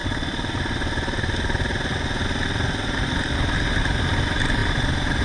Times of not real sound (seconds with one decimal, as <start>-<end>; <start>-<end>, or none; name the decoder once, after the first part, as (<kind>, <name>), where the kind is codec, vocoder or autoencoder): none